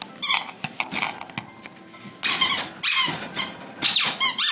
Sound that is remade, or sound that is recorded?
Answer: recorded